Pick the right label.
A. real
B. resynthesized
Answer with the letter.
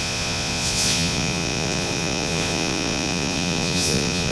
B